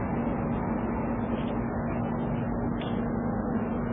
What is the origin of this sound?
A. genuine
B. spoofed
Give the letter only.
A